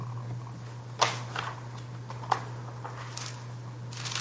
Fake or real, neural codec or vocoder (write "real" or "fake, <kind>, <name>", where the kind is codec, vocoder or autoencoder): real